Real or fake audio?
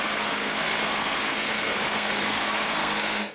fake